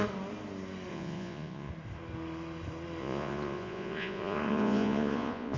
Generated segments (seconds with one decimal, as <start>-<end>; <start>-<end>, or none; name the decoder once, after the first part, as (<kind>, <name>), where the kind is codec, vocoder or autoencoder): 0.9-1.7 (vocoder, Vocos); 3.0-5.6